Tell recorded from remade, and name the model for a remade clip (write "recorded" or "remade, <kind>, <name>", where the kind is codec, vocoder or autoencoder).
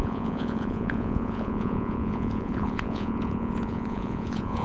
remade, vocoder, Vocos